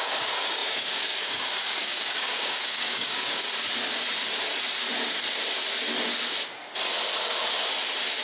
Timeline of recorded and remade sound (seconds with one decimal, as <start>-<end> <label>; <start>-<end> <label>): 0.0-3.5 remade; 3.5-8.2 recorded